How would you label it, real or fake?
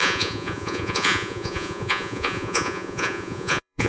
fake